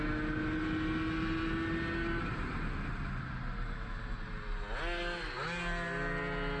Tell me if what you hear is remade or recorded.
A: recorded